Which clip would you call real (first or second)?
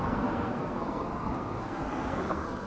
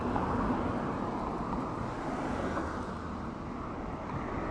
second